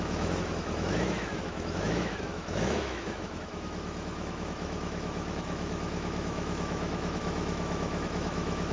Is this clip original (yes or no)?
no